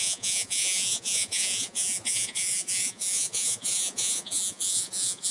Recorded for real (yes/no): no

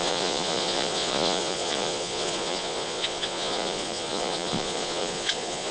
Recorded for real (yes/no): no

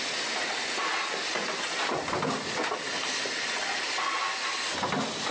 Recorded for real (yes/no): yes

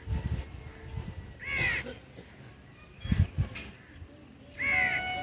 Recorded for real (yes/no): yes